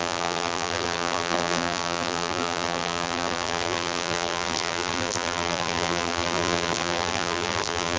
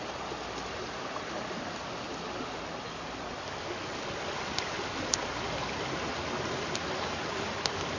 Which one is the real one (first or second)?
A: second